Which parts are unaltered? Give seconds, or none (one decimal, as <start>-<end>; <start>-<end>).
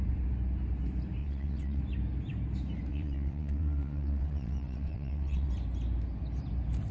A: 0.0-1.2; 1.8-2.9; 5.5-6.9